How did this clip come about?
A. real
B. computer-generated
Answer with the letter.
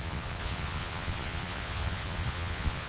B